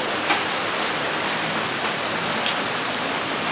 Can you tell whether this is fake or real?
fake